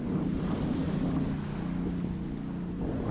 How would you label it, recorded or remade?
recorded